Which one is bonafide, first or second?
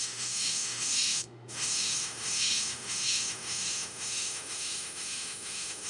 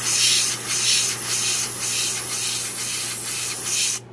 second